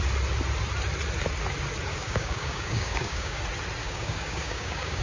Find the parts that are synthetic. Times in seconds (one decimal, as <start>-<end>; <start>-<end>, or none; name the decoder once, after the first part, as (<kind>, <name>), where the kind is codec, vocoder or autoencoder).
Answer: 1.9-3.4 (codec, DAC); 3.8-5.0